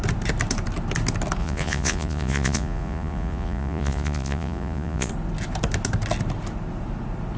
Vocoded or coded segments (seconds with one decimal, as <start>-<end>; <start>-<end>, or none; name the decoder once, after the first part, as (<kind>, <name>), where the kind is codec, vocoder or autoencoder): 1.4-5.1 (vocoder, Vocos)